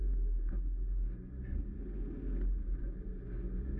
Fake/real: real